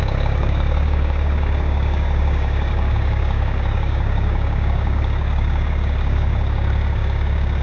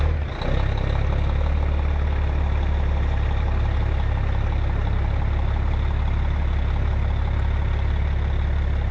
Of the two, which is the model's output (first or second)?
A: first